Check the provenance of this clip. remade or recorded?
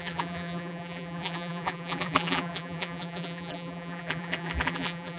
remade